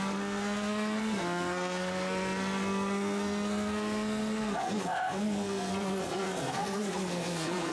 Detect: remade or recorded remade